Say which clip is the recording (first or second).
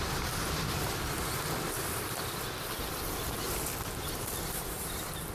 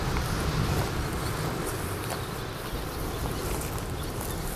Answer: second